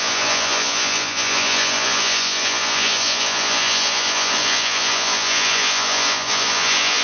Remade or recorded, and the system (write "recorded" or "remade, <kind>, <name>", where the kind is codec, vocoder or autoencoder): remade, vocoder, Vocos